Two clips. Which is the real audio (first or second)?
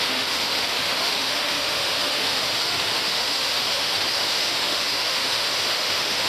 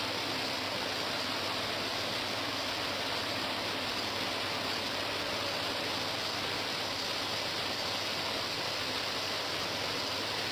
second